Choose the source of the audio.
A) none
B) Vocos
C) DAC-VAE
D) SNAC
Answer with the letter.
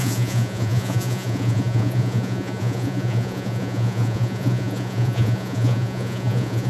B